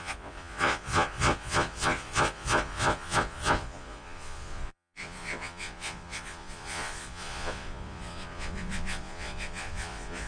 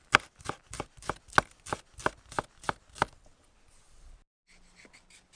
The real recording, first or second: second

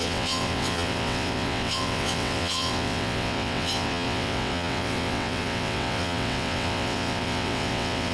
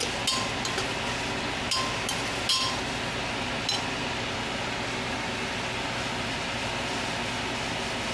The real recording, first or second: second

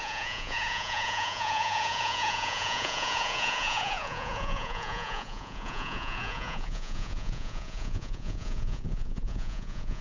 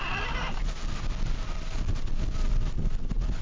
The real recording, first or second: second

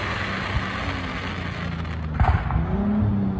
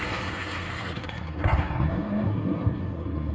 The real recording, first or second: first